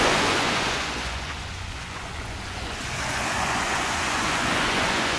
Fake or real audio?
fake